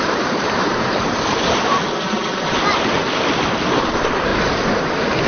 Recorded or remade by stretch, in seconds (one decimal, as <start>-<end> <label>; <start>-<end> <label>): 0.0-0.7 remade; 0.7-3.9 recorded; 3.9-4.3 remade; 4.3-5.3 recorded